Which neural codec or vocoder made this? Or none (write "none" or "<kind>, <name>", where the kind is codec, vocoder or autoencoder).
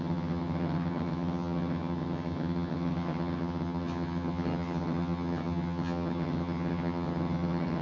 vocoder, HiFi-GAN